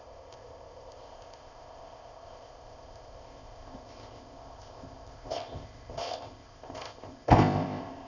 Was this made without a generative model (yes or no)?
no